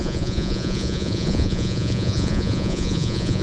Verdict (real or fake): fake